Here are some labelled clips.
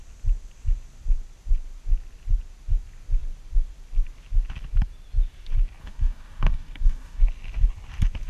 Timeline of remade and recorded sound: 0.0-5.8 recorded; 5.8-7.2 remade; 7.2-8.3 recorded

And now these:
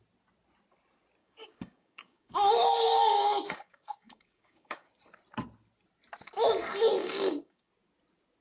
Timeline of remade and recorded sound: 0.0-1.2 recorded; 1.2-4.9 remade; 4.9-7.0 recorded; 7.0-7.7 remade; 7.7-8.4 recorded